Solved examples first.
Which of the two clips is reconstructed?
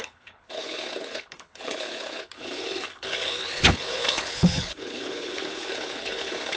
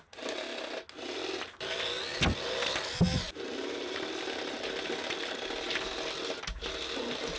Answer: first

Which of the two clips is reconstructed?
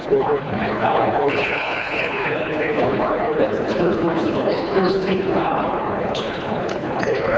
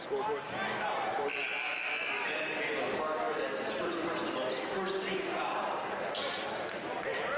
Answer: first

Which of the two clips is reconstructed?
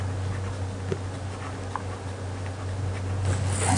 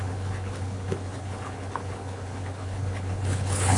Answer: second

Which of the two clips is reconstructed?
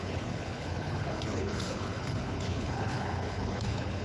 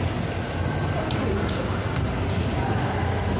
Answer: first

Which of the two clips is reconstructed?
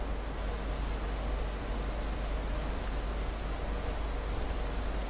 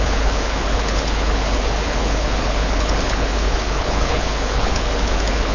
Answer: second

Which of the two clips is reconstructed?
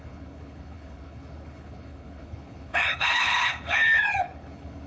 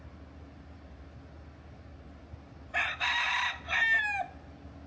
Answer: first